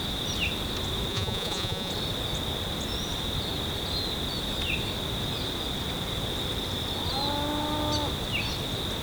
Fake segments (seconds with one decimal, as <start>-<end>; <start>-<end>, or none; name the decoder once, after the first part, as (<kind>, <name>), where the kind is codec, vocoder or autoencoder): 1.1-1.9 (vocoder, Vocos)

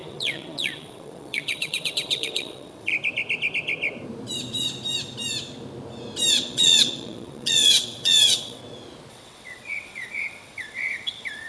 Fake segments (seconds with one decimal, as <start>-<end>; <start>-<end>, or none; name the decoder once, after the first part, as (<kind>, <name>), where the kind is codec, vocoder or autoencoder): 0.0-2.9 (vocoder, WaveNeXt); 6.3-8.6; 9.1-11.5

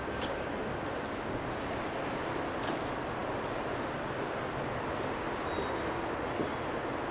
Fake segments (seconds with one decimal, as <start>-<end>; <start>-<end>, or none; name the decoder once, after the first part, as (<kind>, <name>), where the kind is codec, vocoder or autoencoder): none

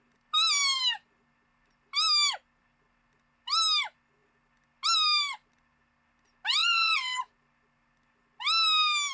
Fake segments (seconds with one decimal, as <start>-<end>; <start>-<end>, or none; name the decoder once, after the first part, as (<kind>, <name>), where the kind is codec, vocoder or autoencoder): 6.6-7.2 (vocoder, Vocos)

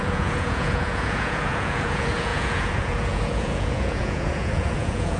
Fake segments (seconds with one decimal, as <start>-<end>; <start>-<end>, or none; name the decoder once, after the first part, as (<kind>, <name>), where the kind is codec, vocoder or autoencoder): 0.0-5.2 (vocoder, Vocos)